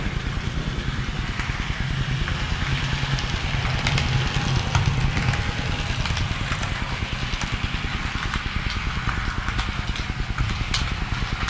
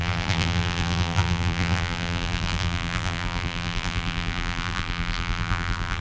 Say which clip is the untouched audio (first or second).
first